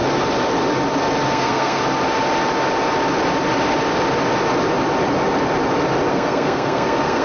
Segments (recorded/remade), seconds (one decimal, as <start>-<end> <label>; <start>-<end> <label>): 0.0-1.3 recorded; 1.3-1.8 remade; 1.8-6.1 recorded; 6.1-7.2 remade